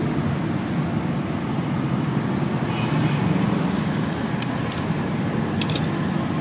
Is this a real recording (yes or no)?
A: yes